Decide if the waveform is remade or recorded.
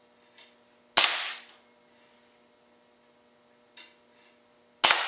recorded